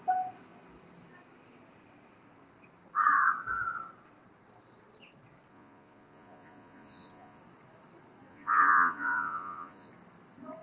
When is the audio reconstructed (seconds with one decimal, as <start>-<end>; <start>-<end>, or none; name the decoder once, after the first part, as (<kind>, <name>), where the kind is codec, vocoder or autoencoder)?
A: 5.5-7.4 (vocoder, Vocos); 8.3-9.9

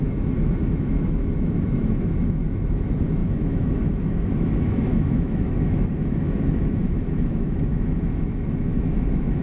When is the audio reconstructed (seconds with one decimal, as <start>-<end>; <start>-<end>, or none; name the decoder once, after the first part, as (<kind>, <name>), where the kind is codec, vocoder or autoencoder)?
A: 0.0-9.4 (autoencoder, DAC-VAE)